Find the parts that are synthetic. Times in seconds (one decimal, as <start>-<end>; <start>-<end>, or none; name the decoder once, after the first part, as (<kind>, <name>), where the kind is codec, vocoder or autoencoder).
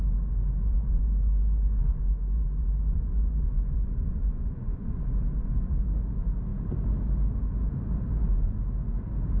0.6-5.0 (vocoder, Vocos)